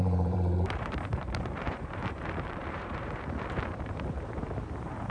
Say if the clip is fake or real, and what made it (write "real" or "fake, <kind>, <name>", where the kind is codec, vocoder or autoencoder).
fake, vocoder, BigVGAN v2